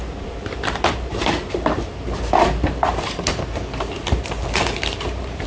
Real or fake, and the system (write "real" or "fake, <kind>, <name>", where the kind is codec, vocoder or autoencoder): fake, vocoder, BigVGAN v2